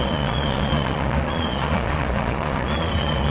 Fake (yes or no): yes